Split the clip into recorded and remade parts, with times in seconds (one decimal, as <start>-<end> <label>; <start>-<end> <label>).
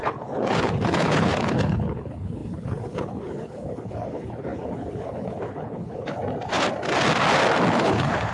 0.0-6.2 remade; 6.2-7.7 recorded; 7.7-8.3 remade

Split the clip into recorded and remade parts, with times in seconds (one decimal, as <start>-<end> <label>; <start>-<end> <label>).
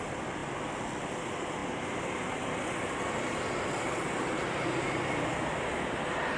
0.0-6.4 recorded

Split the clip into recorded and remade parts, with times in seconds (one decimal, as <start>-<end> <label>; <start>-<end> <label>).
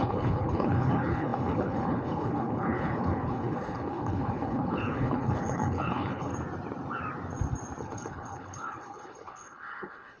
0.0-6.3 remade; 6.3-7.8 recorded; 7.8-10.2 remade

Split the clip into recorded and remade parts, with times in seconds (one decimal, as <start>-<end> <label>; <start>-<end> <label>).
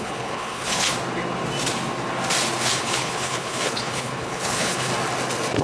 0.0-0.9 remade; 0.9-2.6 recorded; 2.6-4.9 remade; 4.9-5.6 recorded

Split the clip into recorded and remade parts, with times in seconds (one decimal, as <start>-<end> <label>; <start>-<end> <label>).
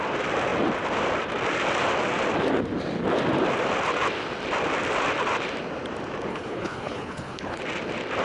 0.0-6.3 recorded; 6.3-7.6 remade; 7.6-8.2 recorded